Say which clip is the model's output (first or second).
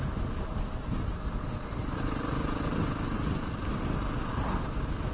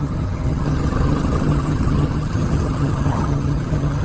second